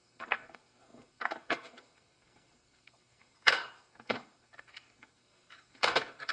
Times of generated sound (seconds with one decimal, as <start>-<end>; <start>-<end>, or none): 0.0-6.3